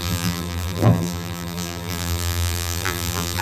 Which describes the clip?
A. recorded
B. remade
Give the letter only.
B